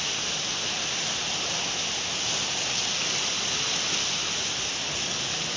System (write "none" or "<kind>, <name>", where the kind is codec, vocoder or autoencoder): none